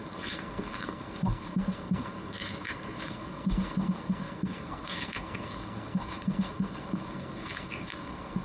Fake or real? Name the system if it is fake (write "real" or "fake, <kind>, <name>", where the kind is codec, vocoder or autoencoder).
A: fake, codec, SNAC